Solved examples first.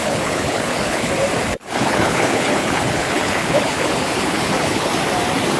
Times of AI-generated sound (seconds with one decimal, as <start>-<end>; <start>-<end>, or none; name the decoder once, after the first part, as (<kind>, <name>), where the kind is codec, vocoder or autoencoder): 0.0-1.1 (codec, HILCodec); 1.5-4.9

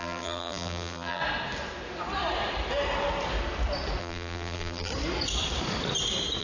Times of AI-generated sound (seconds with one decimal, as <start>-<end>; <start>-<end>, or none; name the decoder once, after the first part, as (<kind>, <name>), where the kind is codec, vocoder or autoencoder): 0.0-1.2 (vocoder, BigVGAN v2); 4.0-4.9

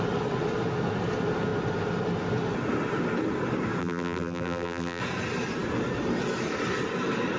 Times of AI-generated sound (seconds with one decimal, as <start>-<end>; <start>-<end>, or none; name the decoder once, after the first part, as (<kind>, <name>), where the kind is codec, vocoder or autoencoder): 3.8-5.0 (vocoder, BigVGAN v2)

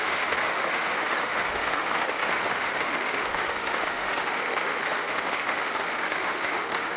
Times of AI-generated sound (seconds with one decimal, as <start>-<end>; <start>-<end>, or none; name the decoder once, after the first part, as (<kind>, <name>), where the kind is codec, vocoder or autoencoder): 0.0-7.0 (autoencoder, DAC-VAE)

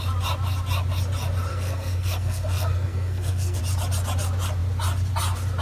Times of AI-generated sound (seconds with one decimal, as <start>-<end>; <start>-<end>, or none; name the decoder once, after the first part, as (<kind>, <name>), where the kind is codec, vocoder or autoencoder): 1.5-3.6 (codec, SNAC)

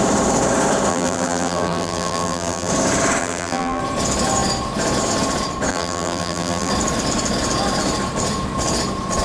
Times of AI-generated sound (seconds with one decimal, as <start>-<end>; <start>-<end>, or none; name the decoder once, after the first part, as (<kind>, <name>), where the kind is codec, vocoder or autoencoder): 0.9-2.7 (vocoder, BigVGAN v2); 3.2-3.8; 5.7-6.7